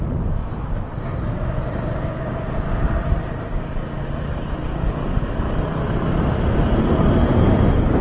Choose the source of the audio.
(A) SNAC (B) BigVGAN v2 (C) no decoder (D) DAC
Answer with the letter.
C